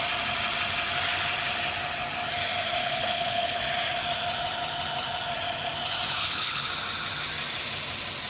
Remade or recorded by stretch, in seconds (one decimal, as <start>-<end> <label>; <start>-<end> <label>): 0.0-2.8 recorded; 2.8-3.6 remade; 3.6-6.2 recorded; 6.2-6.7 remade; 6.7-8.3 recorded